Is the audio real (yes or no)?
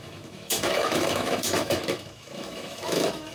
no